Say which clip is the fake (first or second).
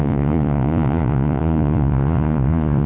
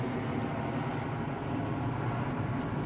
first